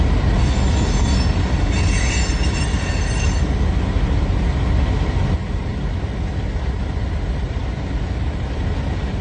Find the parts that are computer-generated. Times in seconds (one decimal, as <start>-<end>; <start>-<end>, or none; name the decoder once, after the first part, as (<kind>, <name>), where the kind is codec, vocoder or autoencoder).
none